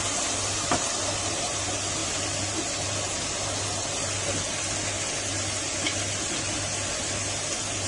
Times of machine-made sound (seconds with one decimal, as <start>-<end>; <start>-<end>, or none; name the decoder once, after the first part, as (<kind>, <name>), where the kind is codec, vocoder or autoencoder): none